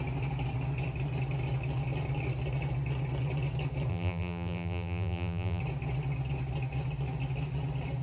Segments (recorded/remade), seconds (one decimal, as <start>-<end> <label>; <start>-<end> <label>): 0.0-3.9 recorded; 3.9-5.6 remade; 5.6-8.0 recorded